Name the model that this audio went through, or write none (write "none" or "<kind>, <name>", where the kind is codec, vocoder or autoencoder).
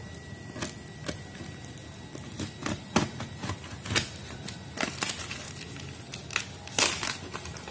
none